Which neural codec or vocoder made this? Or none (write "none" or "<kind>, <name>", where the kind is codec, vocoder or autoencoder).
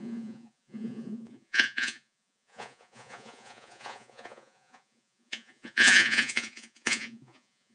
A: vocoder, Vocos